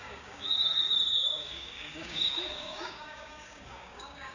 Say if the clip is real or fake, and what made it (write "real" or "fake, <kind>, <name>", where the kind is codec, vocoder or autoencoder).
fake, codec, DAC